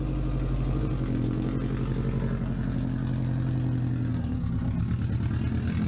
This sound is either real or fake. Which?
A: real